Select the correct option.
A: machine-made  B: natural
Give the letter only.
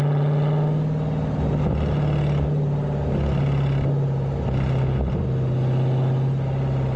B